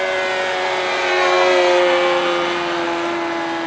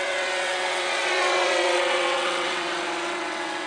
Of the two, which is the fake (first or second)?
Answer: second